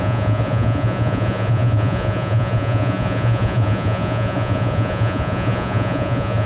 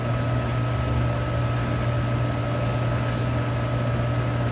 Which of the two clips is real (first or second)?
second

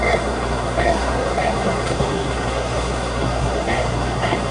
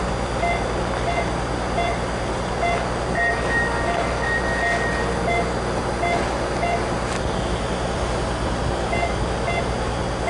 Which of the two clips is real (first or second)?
second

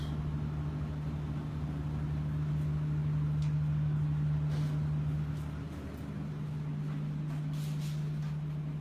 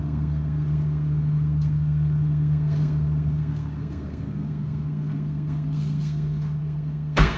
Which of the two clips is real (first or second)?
first